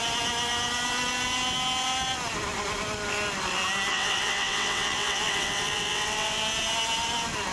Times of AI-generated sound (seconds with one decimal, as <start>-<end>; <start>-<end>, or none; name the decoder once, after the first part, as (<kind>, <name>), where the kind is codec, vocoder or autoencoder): 3.9-6.4 (vocoder, WaveNeXt)